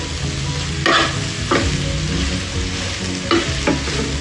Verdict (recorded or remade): recorded